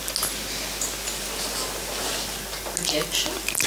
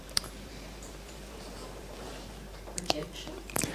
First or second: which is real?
first